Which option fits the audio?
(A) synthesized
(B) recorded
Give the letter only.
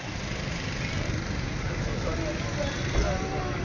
B